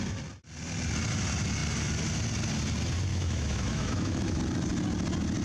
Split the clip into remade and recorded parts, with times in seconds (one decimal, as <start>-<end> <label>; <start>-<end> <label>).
0.0-3.1 recorded; 3.1-4.4 remade; 4.4-5.4 recorded

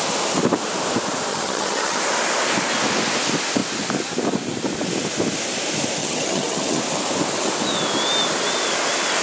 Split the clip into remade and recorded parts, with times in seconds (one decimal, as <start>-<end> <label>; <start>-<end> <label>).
0.0-1.3 recorded; 1.3-2.0 remade; 2.0-6.0 recorded; 6.0-6.8 remade; 6.8-9.2 recorded

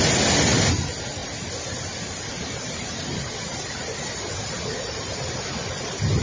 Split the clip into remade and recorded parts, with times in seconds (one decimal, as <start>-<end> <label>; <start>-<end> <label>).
0.0-6.2 recorded

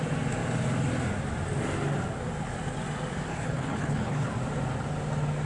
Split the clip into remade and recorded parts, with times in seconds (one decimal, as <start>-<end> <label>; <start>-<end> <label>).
0.0-3.3 recorded; 3.3-4.3 remade; 4.3-5.5 recorded

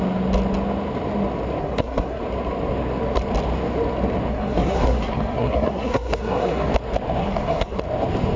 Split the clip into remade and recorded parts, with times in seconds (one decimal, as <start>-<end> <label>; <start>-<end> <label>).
0.0-1.6 recorded; 1.6-2.2 remade; 2.2-4.3 recorded; 4.3-6.7 remade; 6.7-7.2 recorded; 7.2-7.8 remade; 7.8-8.4 recorded

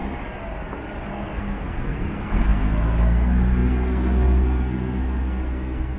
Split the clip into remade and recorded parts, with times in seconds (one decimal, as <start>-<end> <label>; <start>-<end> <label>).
0.0-1.1 recorded; 1.1-6.0 remade